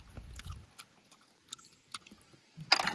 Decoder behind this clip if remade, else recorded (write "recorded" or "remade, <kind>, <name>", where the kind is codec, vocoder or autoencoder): recorded